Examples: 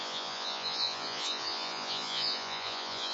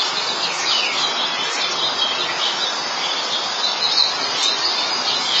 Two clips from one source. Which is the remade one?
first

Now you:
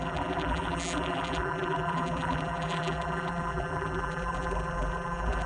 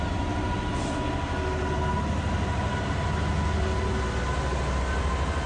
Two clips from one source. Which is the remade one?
first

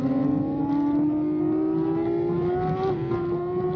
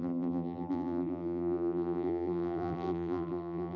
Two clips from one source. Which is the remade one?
second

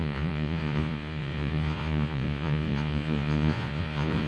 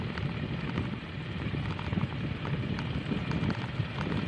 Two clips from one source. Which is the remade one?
first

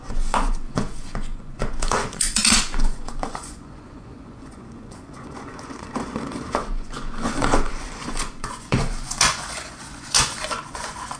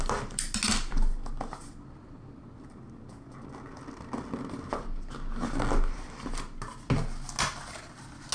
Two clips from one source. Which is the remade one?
first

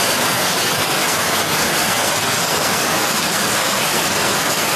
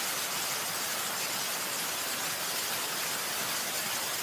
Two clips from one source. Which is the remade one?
first